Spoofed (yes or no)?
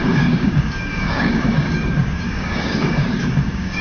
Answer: yes